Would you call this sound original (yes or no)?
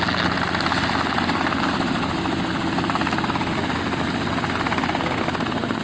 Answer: yes